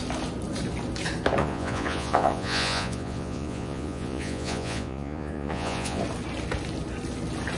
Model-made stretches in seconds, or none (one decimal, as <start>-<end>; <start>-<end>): 1.4-6.0

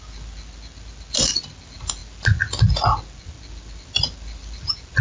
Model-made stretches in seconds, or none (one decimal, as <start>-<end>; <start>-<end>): none